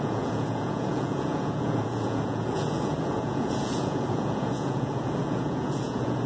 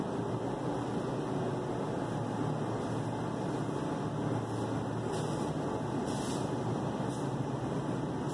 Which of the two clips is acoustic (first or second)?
second